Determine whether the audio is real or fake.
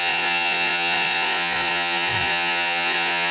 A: fake